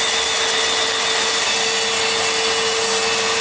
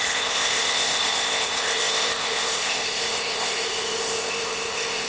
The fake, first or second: second